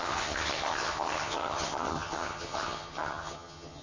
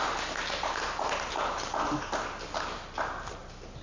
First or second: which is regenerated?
first